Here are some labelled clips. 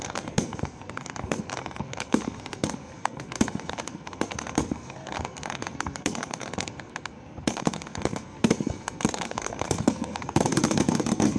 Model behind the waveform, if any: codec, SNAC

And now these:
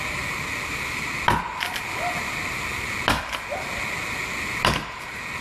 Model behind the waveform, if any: none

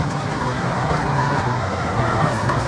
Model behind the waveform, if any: codec, SNAC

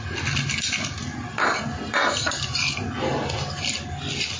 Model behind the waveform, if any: none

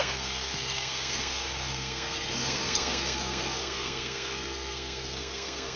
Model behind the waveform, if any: codec, SNAC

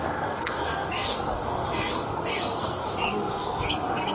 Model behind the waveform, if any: codec, SNAC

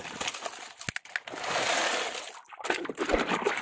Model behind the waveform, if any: none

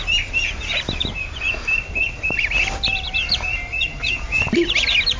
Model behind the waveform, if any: none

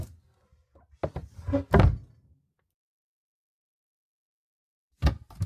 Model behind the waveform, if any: none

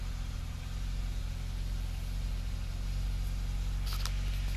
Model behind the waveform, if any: none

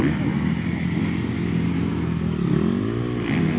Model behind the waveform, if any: none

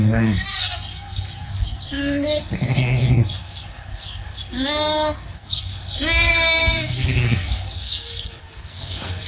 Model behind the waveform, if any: codec, SNAC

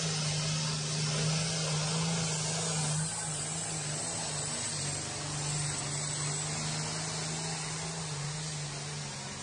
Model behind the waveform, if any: none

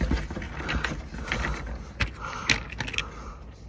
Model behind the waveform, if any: none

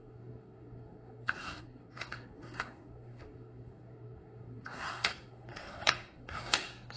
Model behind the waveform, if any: codec, SNAC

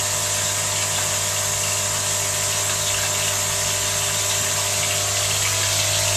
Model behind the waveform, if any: none